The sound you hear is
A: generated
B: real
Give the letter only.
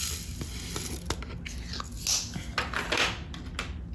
B